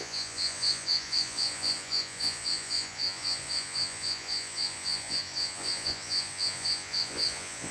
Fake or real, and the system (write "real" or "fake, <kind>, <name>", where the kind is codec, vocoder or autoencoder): fake, vocoder, Vocos